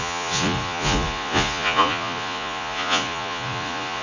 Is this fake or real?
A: fake